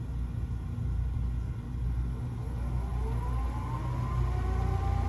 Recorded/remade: recorded